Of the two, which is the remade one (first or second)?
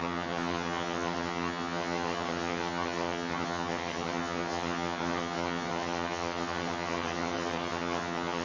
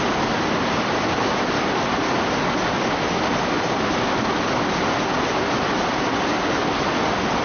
first